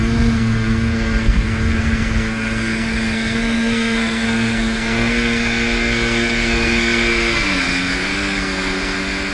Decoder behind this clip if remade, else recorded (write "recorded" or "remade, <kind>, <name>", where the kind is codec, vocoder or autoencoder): remade, codec, SNAC